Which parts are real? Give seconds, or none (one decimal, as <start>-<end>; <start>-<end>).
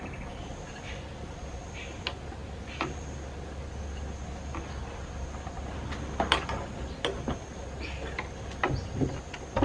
0.0-9.6